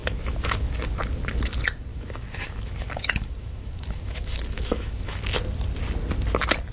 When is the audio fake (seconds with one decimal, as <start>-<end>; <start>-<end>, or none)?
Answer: 0.0-0.7; 1.9-5.2